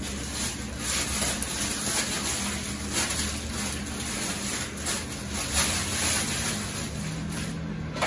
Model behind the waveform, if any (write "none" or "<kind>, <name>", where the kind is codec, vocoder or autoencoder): none